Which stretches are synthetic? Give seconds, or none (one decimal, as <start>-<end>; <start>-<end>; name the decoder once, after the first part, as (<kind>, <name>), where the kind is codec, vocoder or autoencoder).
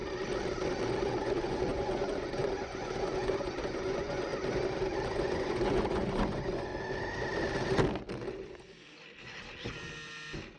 1.0-4.3 (vocoder, Vocos); 5.1-6.7